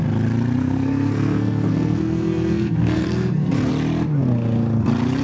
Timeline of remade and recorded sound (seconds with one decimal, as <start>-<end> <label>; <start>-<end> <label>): 0.0-0.6 recorded; 0.6-3.7 remade; 3.7-5.2 recorded